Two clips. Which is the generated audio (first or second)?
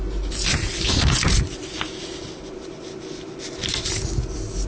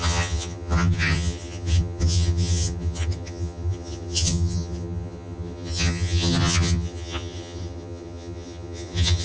second